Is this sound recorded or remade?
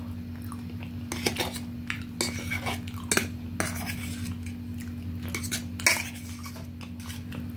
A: recorded